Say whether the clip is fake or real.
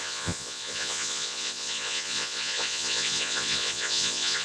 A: fake